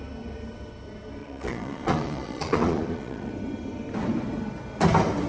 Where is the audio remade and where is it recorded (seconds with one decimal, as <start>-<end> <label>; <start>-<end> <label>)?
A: 0.0-1.2 recorded; 1.2-3.3 remade; 3.3-5.3 recorded